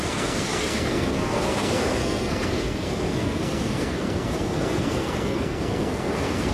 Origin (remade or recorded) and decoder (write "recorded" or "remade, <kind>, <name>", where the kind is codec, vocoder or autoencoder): remade, codec, SNAC